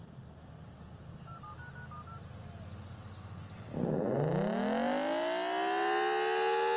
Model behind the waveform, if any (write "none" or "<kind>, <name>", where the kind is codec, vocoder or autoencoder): none